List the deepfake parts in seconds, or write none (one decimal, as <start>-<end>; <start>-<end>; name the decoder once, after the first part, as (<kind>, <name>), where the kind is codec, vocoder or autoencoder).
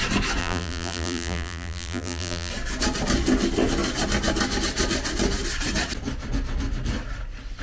0.4-2.5 (vocoder, BigVGAN v2)